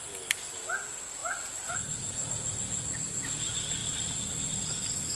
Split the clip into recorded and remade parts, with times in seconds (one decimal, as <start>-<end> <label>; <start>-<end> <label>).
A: 0.0-5.2 remade